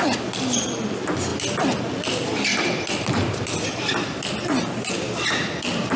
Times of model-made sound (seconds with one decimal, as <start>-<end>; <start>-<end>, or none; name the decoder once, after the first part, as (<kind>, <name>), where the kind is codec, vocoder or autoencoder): none